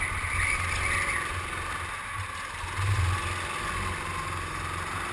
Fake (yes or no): no